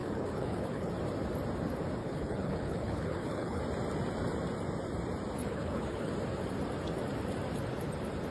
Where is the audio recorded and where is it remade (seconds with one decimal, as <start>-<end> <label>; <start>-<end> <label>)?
0.0-0.9 remade; 0.9-2.0 recorded; 2.0-3.6 remade; 3.6-5.4 recorded; 5.4-6.1 remade; 6.1-8.3 recorded